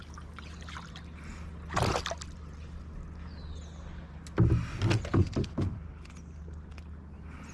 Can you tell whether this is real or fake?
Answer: real